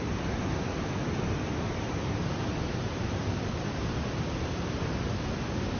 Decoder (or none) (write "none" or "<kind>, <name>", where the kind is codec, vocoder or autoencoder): none